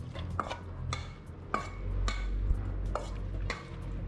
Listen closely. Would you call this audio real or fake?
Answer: real